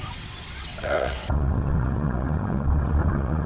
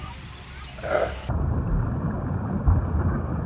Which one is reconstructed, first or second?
first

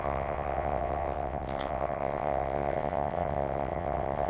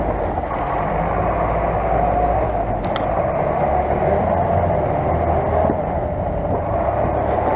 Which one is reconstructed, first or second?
first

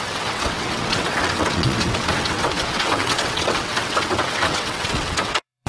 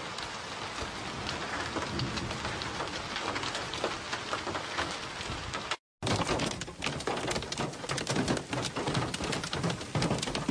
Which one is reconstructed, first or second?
first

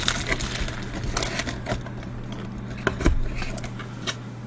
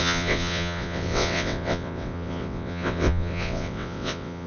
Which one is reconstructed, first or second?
second